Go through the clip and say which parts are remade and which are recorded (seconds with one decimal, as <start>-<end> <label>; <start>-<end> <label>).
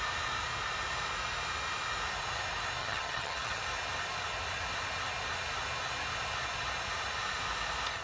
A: 0.0-2.8 recorded; 2.8-3.6 remade; 3.6-8.0 recorded